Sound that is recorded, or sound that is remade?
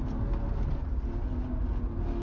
recorded